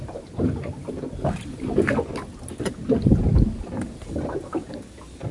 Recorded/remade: recorded